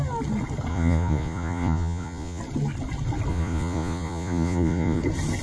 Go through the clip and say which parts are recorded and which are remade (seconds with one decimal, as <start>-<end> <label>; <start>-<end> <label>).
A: 0.0-0.7 recorded; 0.7-2.4 remade; 2.4-3.3 recorded; 3.3-5.0 remade; 5.0-5.4 recorded